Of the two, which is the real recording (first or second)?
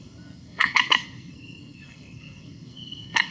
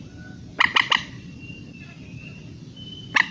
second